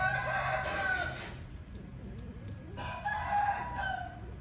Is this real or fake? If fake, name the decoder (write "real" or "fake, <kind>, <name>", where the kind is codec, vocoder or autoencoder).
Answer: real